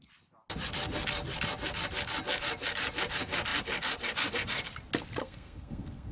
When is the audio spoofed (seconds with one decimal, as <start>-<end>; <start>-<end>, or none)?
5.2-6.1